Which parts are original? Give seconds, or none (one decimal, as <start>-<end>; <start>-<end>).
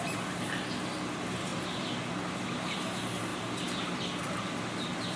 0.0-5.2